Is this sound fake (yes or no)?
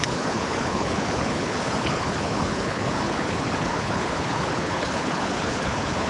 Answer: yes